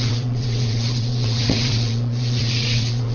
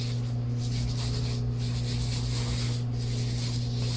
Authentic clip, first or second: second